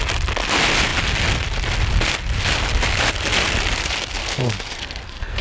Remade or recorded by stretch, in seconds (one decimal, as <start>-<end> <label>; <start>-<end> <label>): 0.0-4.2 recorded; 4.2-5.4 remade